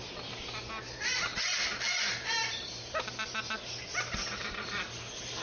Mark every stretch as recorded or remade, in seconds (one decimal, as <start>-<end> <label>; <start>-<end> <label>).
0.0-1.7 recorded; 1.7-4.9 remade; 4.9-5.4 recorded